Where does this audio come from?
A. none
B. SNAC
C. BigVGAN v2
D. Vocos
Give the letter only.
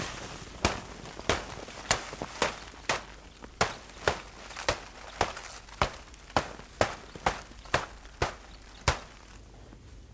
A